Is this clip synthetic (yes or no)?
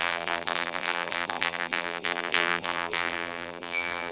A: yes